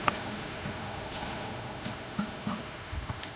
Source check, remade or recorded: remade